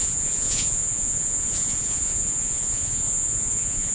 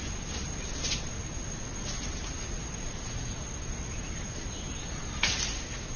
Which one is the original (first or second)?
second